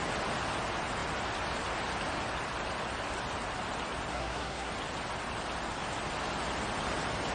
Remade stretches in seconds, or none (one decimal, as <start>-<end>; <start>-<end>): 4.1-4.7